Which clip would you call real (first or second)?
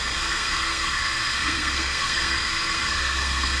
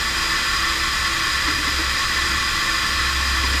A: second